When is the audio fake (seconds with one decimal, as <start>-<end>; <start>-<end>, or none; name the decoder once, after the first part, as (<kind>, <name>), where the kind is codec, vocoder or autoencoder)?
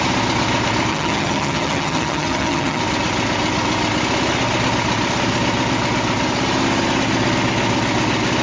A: 0.9-2.8 (vocoder, HiFi-GAN)